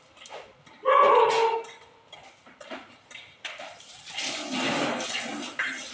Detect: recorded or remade recorded